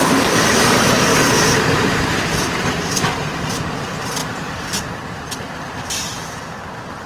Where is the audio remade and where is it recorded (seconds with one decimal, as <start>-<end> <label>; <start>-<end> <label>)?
0.0-1.1 recorded; 1.1-3.6 remade; 3.6-7.1 recorded

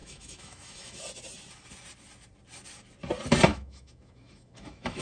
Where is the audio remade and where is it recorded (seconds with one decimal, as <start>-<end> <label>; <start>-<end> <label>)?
0.0-1.0 remade; 1.0-3.5 recorded; 3.5-5.0 remade

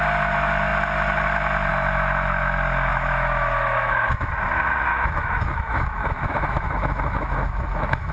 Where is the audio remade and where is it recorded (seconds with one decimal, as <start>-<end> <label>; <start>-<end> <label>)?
0.0-2.9 recorded; 2.9-4.3 remade; 4.3-4.9 recorded; 4.9-8.1 remade

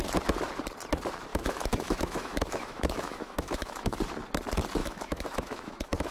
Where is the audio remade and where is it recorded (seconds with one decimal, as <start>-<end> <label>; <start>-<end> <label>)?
0.0-1.3 recorded; 1.3-4.0 remade; 4.0-4.8 recorded; 4.8-6.1 remade

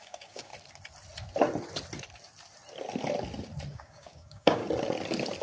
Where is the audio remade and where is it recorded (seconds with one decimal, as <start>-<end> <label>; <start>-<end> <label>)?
0.0-0.5 remade; 0.5-3.7 recorded; 3.7-4.6 remade; 4.6-5.4 recorded